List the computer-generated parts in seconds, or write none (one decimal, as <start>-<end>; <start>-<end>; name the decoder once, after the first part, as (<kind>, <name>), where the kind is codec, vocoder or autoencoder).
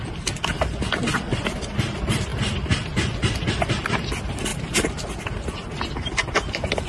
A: none